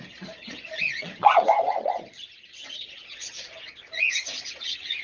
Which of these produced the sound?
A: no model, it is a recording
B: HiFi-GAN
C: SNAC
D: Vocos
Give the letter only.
D